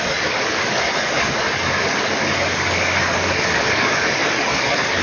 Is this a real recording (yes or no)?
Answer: no